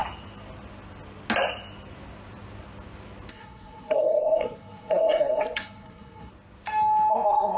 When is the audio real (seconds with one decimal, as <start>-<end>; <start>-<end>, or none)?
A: 0.0-3.3; 6.3-7.1